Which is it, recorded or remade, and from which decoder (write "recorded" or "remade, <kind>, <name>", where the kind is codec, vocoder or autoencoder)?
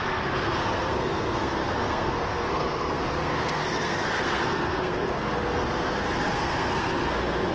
remade, codec, SNAC